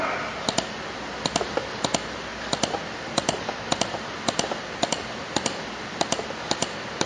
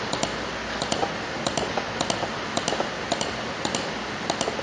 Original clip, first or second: second